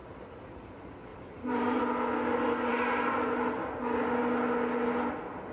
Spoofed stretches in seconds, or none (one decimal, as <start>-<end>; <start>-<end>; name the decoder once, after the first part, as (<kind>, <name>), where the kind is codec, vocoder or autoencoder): 1.1-1.8 (vocoder, BigVGAN v2); 2.7-3.7